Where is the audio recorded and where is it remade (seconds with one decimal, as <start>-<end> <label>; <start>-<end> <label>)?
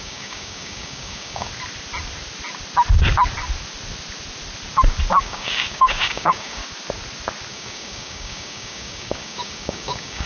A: 0.0-1.5 remade; 1.5-5.2 recorded; 5.2-6.6 remade; 6.6-7.5 recorded; 7.5-10.3 remade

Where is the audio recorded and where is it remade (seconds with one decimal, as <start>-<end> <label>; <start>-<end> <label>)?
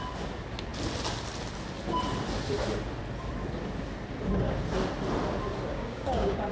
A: 0.0-5.7 recorded; 5.7-6.5 remade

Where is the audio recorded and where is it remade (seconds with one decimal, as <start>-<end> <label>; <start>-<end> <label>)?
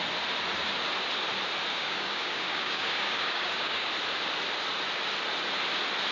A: 0.0-1.7 recorded; 1.7-3.9 remade; 3.9-6.1 recorded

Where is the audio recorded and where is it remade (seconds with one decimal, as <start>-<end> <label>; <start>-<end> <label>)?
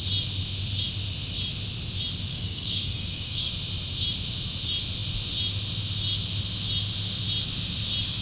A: 0.0-2.3 recorded; 2.3-3.5 remade; 3.5-8.2 recorded